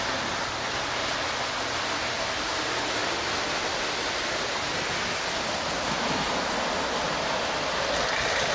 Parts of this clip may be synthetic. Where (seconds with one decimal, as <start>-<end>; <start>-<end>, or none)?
3.0-5.9